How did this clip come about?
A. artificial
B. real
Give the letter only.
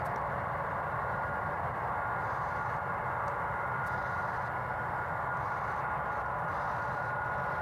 B